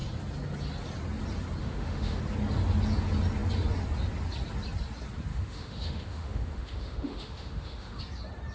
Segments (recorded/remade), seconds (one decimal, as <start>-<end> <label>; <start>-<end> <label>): 0.0-1.6 recorded; 1.6-2.2 remade; 2.2-5.3 recorded; 5.3-8.0 remade; 8.0-8.5 recorded